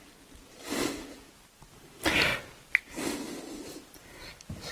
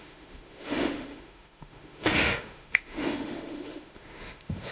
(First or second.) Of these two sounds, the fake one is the second